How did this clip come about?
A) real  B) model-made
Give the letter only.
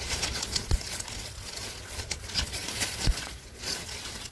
B